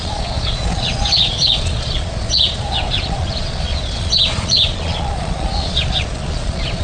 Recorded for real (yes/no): no